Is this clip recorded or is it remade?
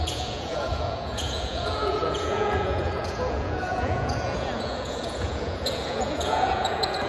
remade